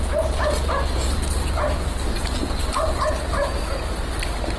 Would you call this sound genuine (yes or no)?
yes